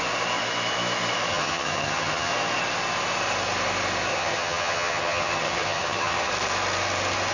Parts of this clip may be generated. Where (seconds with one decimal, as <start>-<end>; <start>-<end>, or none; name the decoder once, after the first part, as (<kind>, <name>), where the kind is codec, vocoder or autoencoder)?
1.3-2.3 (vocoder, HiFi-GAN); 4.1-6.3